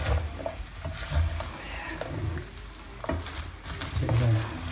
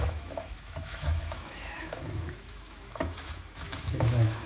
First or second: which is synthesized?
second